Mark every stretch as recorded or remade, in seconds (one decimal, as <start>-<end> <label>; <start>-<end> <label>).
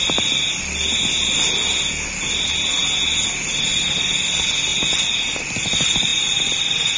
0.0-7.0 recorded